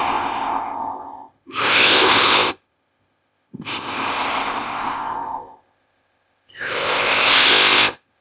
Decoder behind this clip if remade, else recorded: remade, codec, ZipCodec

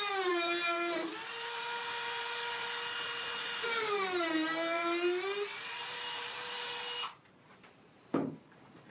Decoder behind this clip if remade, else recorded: remade, vocoder, BigVGAN v2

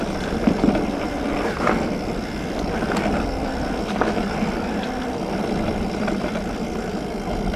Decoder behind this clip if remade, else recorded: recorded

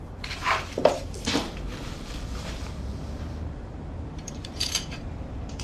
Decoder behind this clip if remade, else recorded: remade, vocoder, BigVGAN v2